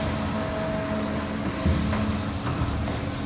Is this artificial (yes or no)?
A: no